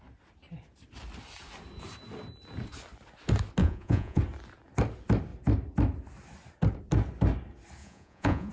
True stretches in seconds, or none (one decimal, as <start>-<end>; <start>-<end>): 0.0-3.6; 4.2-7.8